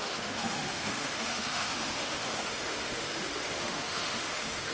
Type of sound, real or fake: fake